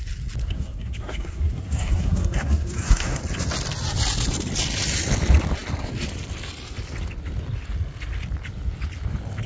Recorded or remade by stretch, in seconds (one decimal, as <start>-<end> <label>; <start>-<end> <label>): 0.0-0.4 recorded; 0.4-3.2 remade; 3.2-9.5 recorded